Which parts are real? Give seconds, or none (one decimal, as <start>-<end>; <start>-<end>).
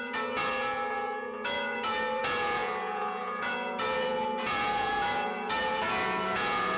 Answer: none